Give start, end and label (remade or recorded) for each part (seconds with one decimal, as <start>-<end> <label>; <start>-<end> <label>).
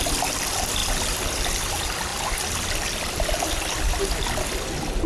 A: 0.0-5.1 recorded